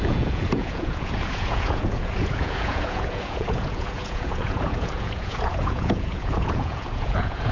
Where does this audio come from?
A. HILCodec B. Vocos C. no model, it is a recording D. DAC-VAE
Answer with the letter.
B